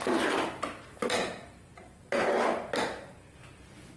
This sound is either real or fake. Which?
real